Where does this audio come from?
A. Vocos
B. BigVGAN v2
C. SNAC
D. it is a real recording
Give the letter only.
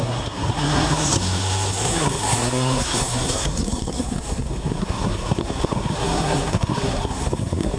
C